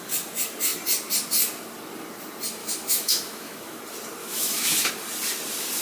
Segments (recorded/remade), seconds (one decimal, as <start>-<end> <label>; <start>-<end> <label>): 0.0-2.6 recorded; 2.6-3.8 remade; 3.8-4.2 recorded; 4.2-4.9 remade; 4.9-5.8 recorded